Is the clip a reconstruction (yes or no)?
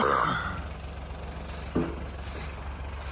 no